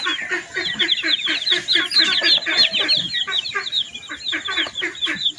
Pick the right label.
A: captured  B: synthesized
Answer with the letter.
A